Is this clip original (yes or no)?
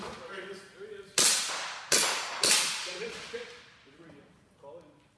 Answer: yes